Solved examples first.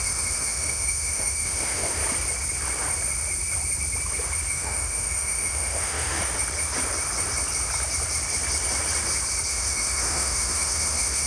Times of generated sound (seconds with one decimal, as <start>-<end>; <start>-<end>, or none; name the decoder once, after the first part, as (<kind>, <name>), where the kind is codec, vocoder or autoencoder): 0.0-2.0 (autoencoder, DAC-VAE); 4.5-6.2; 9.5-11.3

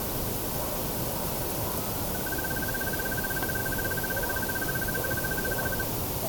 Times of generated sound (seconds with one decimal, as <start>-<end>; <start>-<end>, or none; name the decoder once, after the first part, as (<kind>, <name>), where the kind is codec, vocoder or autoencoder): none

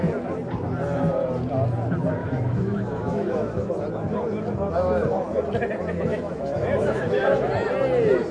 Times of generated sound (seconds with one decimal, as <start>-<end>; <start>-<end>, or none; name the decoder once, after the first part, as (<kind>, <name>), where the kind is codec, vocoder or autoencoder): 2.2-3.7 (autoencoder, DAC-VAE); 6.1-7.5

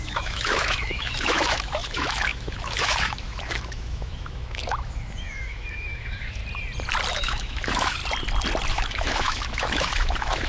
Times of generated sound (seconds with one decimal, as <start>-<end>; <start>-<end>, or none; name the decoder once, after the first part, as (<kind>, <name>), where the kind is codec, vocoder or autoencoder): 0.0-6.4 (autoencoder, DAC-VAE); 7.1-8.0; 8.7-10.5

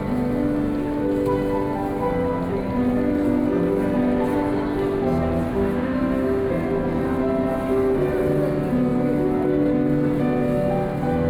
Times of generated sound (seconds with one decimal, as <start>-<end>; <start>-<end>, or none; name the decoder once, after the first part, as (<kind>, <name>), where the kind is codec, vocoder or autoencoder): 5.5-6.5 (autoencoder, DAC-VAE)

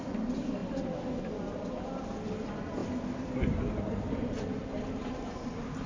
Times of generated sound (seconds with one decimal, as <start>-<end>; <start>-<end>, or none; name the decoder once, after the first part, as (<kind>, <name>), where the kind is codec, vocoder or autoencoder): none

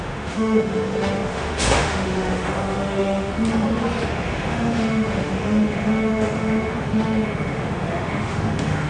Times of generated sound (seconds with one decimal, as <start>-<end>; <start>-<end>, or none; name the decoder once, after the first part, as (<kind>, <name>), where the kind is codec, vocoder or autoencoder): 0.0-3.3 (autoencoder, DAC-VAE); 4.1-8.9

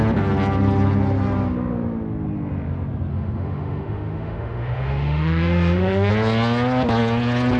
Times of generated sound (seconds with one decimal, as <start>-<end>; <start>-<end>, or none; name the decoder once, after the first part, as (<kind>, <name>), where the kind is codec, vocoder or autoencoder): 3.1-6.1 (autoencoder, DAC-VAE)